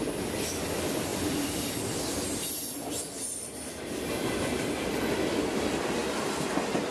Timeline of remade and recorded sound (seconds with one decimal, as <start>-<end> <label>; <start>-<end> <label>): 0.0-6.9 recorded